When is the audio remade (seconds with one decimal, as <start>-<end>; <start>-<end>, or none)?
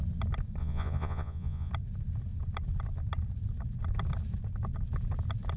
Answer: 0.6-1.7